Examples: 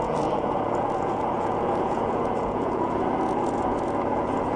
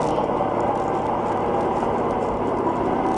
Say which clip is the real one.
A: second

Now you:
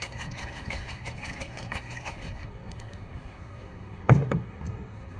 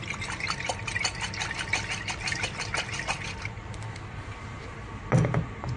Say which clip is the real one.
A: second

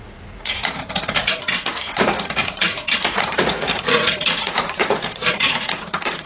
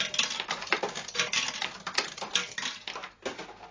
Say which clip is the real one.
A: second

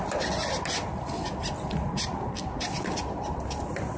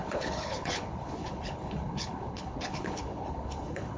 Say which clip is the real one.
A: first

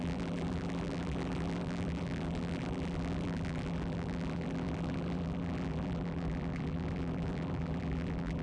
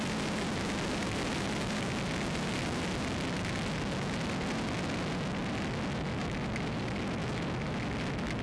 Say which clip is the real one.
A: second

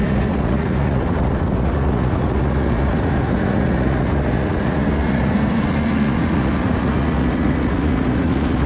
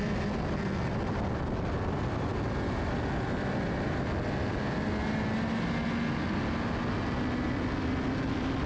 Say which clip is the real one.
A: second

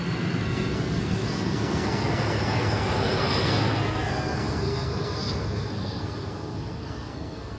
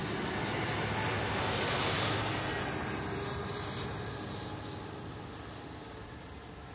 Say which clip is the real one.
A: second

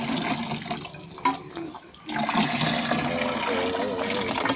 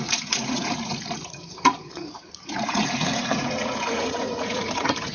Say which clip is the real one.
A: first